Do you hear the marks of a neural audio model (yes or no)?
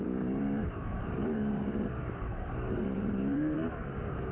yes